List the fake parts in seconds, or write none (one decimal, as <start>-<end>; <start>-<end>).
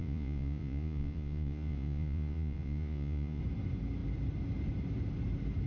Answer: 0.0-3.4